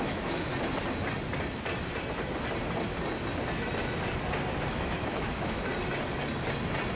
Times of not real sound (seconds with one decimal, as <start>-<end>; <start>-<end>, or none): 0.0-0.5; 4.7-5.7